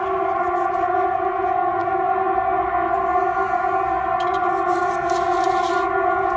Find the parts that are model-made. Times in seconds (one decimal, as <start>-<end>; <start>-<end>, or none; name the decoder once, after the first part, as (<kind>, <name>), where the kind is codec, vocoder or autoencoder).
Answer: none